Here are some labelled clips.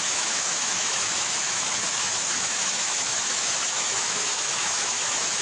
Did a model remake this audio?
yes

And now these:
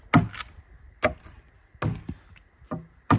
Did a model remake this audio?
no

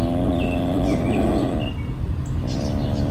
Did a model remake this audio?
no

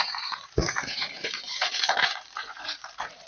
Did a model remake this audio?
yes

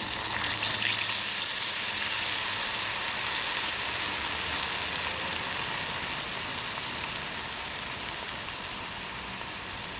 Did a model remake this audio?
no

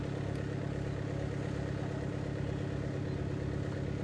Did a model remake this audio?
no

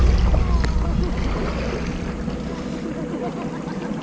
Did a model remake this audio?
no